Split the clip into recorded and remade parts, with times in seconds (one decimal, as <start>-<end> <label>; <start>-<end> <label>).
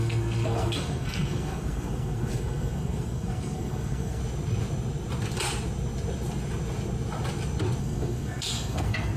0.0-4.2 remade; 4.2-7.8 recorded; 7.8-9.2 remade